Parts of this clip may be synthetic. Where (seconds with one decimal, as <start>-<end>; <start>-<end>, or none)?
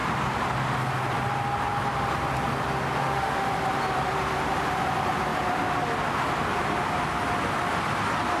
3.0-3.5